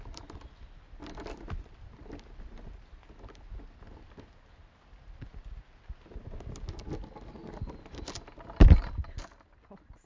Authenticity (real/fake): real